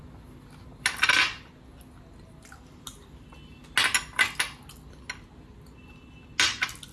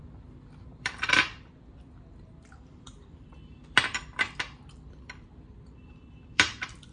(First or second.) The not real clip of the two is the second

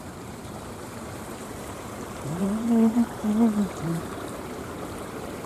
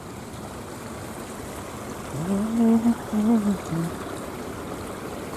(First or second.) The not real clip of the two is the first